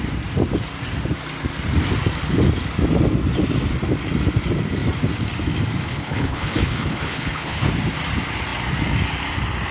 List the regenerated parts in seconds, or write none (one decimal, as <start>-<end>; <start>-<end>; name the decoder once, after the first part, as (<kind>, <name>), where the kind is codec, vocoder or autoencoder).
5.8-7.7 (codec, HILCodec)

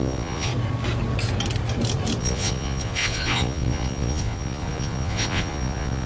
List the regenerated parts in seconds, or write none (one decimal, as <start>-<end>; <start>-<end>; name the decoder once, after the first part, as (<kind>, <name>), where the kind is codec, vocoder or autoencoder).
0.0-0.5 (vocoder, Vocos); 2.2-6.1

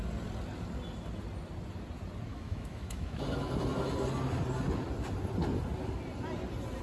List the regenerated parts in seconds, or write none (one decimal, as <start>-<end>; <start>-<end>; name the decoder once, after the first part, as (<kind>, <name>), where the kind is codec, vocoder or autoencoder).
2.3-3.2 (autoencoder, DAC-VAE)

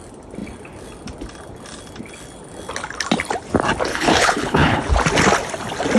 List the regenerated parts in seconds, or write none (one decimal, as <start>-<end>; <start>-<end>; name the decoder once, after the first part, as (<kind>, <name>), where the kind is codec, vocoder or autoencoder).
3.9-4.8 (codec, HILCodec)

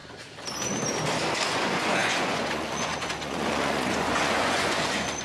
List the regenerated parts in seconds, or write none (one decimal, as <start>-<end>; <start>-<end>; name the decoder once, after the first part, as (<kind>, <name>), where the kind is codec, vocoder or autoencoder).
1.5-5.2 (vocoder, Vocos)

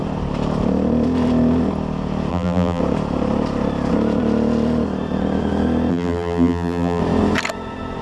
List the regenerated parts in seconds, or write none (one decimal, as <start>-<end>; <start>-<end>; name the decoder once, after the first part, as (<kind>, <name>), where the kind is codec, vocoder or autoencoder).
2.3-2.8 (vocoder, BigVGAN v2); 5.9-7.0

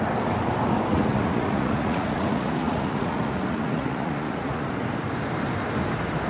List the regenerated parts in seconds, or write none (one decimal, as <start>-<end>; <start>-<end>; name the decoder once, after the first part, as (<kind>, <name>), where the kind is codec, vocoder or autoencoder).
0.9-4.7 (vocoder, Vocos)